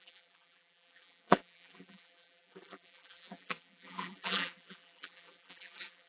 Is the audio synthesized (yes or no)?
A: yes